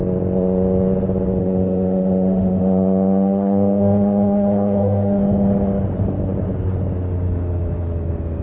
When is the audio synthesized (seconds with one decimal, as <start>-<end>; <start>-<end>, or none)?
1.4-5.2